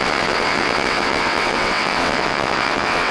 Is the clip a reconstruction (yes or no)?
yes